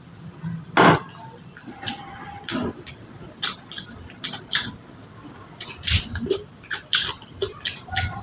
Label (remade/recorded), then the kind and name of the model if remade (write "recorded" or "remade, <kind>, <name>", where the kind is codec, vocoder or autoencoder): recorded